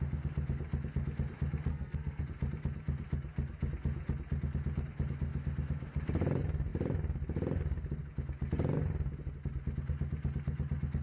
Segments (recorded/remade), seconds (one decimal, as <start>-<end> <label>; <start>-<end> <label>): 0.0-1.7 recorded; 1.7-2.2 remade; 2.2-11.0 recorded